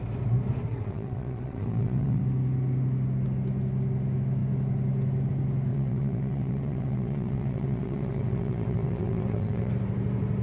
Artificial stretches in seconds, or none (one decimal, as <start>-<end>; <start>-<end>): 0.7-2.2; 5.7-9.7